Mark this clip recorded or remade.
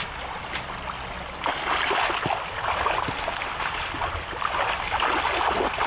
recorded